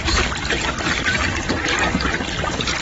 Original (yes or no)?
yes